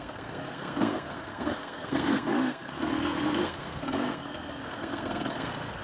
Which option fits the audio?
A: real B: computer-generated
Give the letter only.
B